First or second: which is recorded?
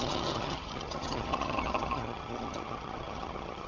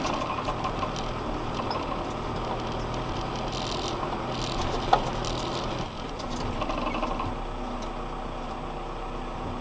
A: second